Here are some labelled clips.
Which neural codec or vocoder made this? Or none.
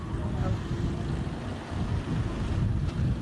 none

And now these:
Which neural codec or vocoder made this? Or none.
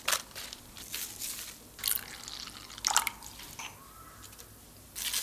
none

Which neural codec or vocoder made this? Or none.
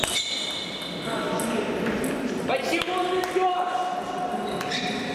none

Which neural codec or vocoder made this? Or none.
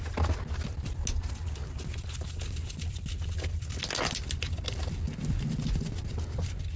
none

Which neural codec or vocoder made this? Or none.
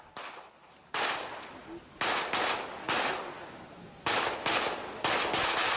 none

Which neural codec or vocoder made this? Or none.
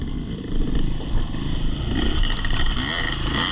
none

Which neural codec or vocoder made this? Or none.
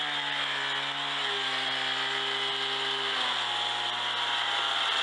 none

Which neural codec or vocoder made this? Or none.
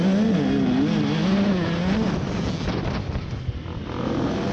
none